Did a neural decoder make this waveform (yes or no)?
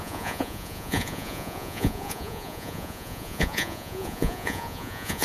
yes